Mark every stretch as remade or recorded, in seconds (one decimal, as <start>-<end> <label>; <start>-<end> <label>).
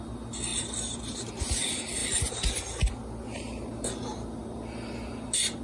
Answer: 0.0-0.5 recorded; 0.5-1.3 remade; 1.3-5.6 recorded